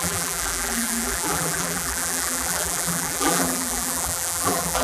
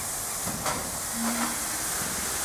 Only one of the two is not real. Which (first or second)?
first